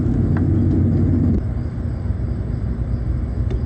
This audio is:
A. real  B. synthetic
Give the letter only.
A